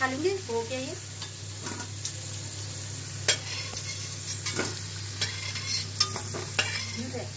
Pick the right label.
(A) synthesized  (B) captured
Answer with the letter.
B